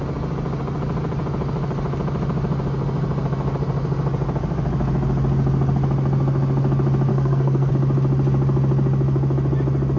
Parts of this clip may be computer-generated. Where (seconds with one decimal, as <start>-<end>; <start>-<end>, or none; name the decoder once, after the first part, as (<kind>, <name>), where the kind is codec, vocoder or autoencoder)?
7.1-7.7 (codec, SNAC)